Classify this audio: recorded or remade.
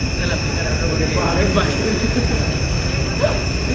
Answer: recorded